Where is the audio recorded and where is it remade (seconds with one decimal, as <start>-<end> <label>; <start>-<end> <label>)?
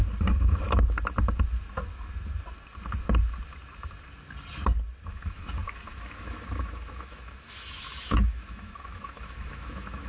0.0-5.1 recorded; 5.1-10.1 remade